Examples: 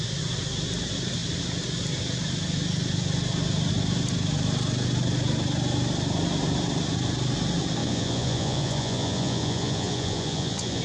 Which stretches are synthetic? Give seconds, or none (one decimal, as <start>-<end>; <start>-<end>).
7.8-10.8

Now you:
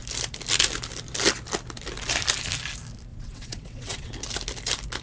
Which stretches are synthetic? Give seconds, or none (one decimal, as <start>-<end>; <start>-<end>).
3.1-4.1

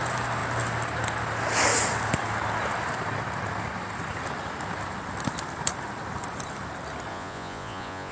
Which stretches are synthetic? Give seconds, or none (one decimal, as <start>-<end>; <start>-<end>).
7.1-8.1

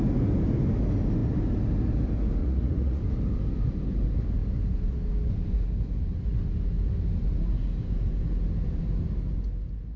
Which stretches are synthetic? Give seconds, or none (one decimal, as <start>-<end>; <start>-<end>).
2.4-3.0

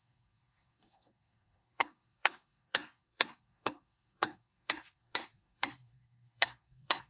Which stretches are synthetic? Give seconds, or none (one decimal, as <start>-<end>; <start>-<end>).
0.0-7.1